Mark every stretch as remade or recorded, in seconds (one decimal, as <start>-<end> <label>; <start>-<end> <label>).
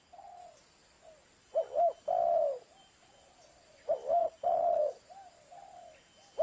0.0-4.2 recorded; 4.2-4.9 remade; 4.9-6.4 recorded